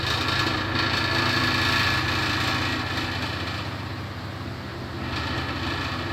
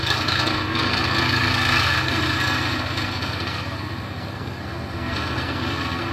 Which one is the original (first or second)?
first